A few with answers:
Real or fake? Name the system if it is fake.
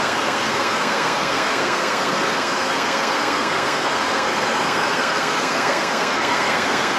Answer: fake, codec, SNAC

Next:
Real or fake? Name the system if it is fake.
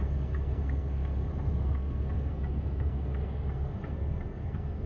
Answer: fake, codec, SNAC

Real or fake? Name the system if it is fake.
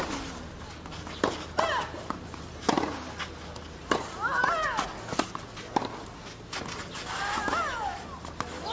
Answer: real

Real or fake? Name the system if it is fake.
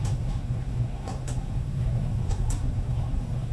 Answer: fake, codec, SNAC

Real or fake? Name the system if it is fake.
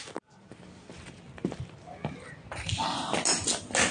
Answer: real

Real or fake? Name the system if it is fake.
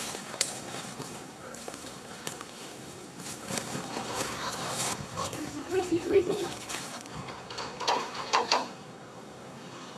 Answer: fake, codec, SNAC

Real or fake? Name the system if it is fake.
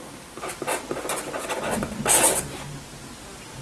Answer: real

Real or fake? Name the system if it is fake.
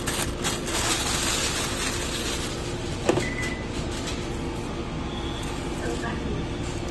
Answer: real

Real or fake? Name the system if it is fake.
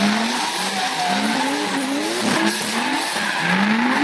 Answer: real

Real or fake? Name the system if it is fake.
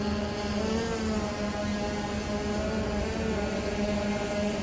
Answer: real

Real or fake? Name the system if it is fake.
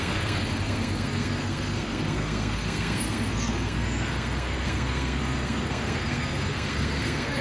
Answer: fake, codec, SNAC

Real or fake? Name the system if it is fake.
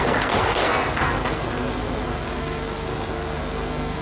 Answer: fake, codec, SNAC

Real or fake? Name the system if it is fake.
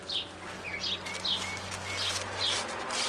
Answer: real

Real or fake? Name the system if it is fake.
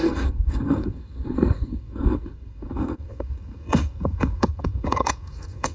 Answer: fake, codec, SNAC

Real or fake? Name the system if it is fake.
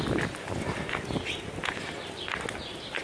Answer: real